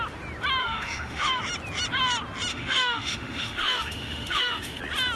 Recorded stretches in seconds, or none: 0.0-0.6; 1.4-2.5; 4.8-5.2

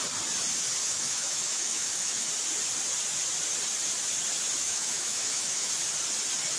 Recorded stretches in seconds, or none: 0.0-0.8; 2.3-4.6; 5.7-6.6